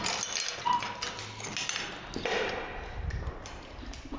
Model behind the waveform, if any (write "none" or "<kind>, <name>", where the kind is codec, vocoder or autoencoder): none